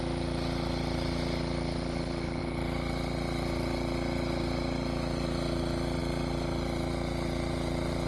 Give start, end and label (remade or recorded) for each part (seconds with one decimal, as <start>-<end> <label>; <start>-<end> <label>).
0.0-8.1 recorded